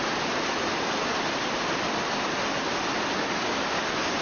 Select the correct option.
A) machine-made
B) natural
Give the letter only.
B